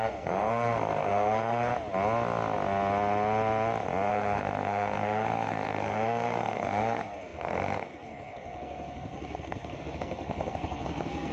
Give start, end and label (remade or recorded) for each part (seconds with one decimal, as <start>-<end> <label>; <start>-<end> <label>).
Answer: 0.0-1.7 remade; 1.7-4.1 recorded; 4.1-11.3 remade